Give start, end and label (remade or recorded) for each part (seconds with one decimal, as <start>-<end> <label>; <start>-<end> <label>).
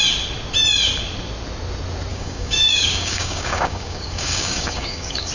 0.0-2.1 recorded; 2.1-5.3 remade